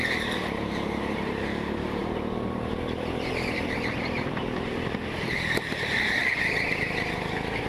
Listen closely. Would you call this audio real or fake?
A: fake